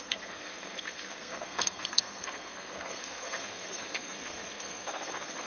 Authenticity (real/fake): fake